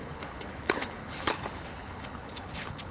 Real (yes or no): no